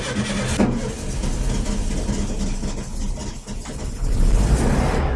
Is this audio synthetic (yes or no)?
no